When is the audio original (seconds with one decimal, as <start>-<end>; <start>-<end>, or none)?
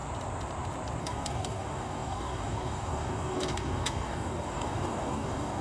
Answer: 0.0-1.0